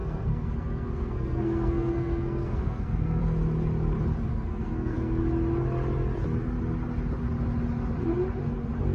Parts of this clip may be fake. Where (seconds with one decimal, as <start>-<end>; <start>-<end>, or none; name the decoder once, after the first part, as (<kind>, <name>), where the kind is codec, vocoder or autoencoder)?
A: 0.0-3.2 (codec, SNAC); 4.3-5.2